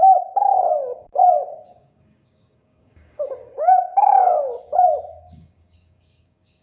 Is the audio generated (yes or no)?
yes